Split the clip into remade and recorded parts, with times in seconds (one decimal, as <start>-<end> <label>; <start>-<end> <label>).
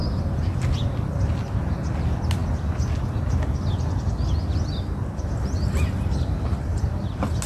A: 0.0-1.3 remade; 1.3-7.5 recorded